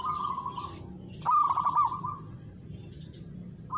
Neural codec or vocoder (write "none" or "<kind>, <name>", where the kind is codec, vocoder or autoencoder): none